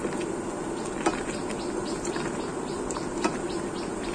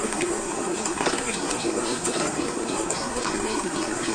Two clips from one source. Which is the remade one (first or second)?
second